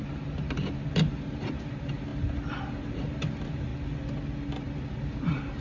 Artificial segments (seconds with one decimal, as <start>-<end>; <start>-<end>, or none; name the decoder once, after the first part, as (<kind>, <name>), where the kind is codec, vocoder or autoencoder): 0.0-3.7 (vocoder, BigVGAN v2); 4.9-5.6